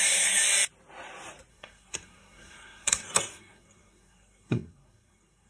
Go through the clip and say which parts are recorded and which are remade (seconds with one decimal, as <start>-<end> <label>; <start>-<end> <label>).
0.0-0.4 remade; 0.4-1.5 recorded; 1.5-5.5 remade